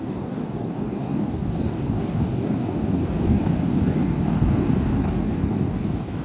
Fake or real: fake